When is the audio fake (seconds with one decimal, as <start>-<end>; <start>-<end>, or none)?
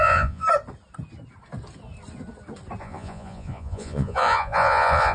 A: 0.0-0.4; 2.8-5.1